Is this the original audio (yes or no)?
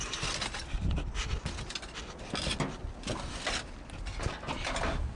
yes